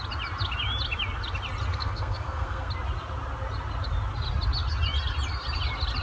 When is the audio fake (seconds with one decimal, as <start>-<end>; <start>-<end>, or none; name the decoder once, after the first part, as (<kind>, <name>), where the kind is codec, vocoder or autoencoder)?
1.7-2.7 (codec, SNAC)